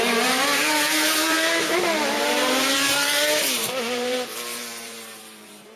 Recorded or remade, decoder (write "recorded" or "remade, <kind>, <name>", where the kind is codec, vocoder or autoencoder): remade, vocoder, BigVGAN v2